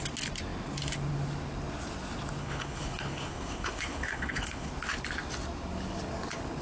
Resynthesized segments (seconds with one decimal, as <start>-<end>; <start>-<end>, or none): 2.4-4.7